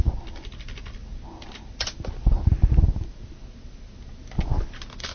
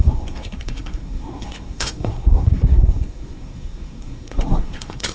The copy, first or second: second